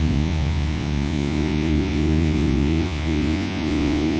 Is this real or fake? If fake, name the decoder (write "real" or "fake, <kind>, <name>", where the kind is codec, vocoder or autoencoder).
fake, vocoder, Vocos